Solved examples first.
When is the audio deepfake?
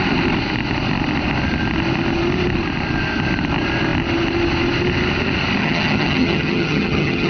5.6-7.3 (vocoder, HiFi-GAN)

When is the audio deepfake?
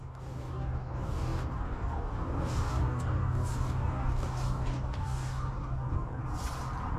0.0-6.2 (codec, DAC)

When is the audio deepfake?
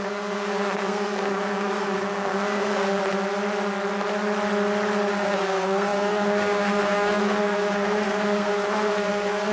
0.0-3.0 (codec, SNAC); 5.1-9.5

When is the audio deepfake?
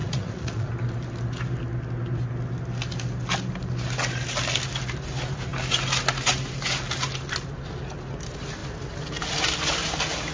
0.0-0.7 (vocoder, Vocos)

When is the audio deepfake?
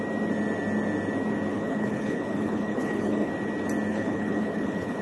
1.5-3.3 (codec, HILCodec); 3.9-5.0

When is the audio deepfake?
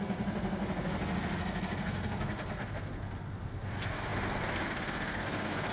0.0-5.7 (codec, SNAC)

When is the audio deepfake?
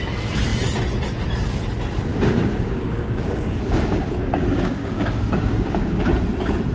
2.1-6.1 (codec, DAC)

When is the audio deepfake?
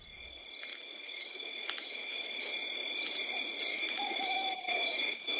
0.7-2.5 (autoencoder, DAC-VAE); 3.7-5.4